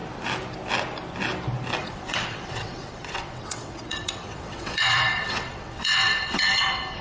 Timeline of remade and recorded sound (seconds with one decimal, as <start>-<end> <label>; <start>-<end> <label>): 0.0-1.8 recorded; 1.8-7.0 remade